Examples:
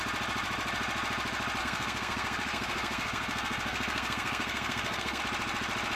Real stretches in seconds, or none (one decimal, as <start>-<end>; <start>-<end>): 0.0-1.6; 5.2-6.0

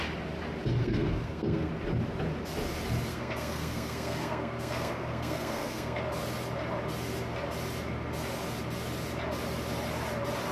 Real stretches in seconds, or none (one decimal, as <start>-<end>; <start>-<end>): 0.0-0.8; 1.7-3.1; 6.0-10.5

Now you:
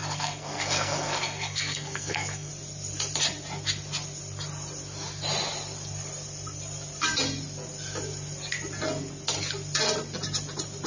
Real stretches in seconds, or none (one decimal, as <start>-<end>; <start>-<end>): 2.5-10.9

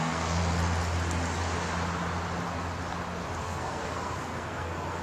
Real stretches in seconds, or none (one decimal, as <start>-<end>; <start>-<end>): 0.4-3.4

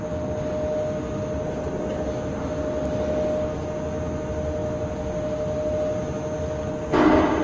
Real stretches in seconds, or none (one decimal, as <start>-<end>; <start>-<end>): 0.0-7.4

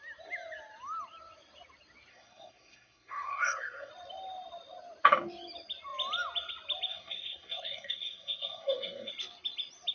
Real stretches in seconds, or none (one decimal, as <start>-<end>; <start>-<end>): 0.0-2.1; 3.9-6.9; 9.1-9.9